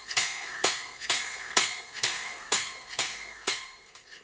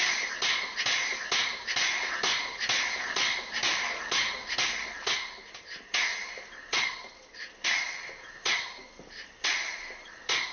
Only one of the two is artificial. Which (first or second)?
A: first